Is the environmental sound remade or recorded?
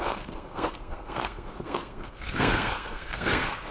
remade